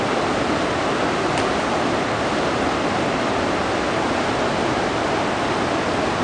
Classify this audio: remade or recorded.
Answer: recorded